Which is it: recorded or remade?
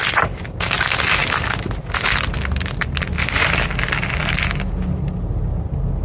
recorded